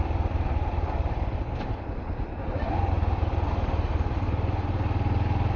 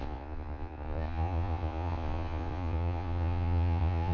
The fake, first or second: second